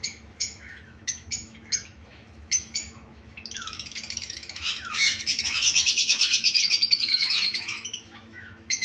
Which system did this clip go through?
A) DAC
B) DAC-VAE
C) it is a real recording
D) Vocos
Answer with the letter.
B